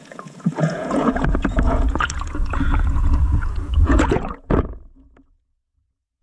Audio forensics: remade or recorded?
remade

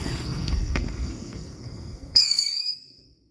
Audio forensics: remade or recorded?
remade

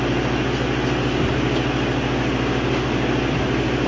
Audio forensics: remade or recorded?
recorded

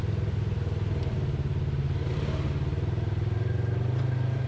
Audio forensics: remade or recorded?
recorded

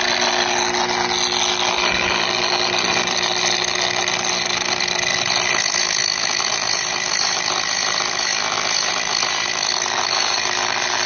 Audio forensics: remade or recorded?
recorded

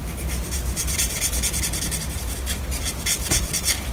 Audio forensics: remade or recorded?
recorded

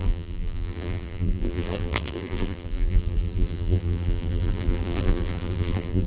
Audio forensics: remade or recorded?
remade